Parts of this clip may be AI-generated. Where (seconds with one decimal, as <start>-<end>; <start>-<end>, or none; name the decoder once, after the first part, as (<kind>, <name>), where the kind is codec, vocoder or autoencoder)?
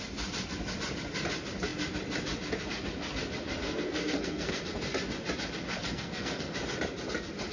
3.6-4.6 (codec, SNAC); 5.8-6.5